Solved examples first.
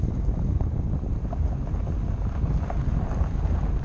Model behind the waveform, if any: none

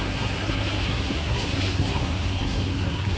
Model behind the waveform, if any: codec, SNAC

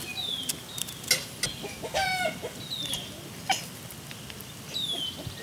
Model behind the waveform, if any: none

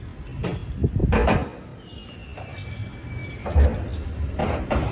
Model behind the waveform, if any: none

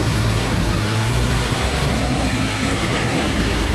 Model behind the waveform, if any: codec, SNAC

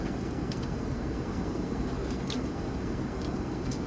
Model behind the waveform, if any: codec, SNAC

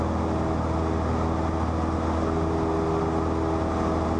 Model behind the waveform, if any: none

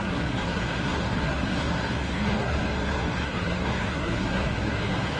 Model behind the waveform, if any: codec, SNAC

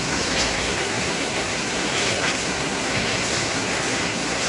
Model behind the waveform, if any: codec, SNAC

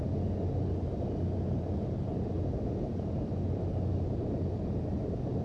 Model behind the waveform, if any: none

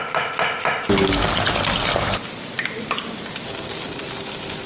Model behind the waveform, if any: none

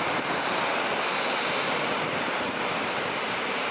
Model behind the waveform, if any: none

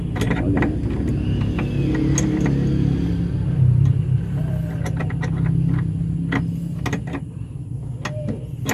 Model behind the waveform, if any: none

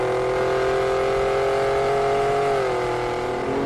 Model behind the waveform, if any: none